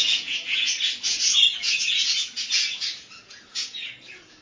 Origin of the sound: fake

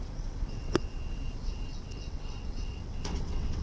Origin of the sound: fake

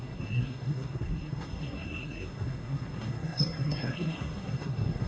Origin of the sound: fake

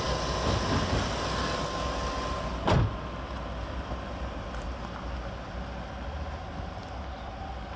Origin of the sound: real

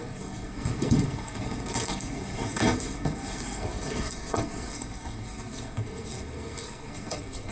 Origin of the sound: fake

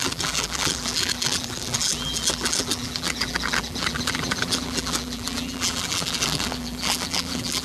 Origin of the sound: fake